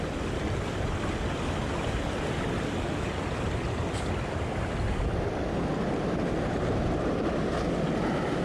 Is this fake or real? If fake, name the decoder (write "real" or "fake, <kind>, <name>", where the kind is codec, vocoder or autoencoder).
real